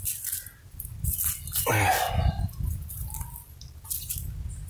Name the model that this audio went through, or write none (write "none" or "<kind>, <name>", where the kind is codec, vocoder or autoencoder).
none